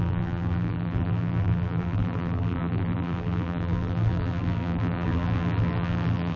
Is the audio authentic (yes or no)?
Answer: no